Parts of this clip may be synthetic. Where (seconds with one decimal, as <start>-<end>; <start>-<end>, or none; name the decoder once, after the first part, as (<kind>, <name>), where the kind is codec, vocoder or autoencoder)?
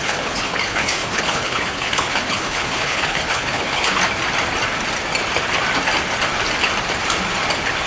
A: 0.0-4.0 (codec, HILCodec)